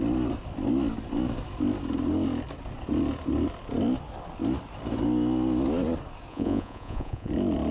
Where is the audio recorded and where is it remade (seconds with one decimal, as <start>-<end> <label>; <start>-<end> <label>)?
0.0-6.3 recorded; 6.3-7.3 remade; 7.3-7.7 recorded